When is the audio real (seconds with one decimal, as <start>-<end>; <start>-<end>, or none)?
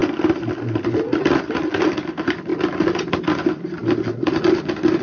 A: 0.0-5.0